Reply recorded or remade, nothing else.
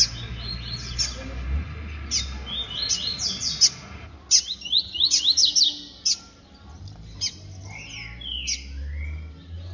recorded